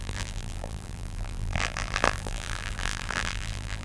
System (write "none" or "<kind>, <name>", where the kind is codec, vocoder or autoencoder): vocoder, BigVGAN v2